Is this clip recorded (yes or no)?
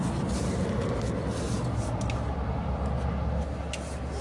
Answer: yes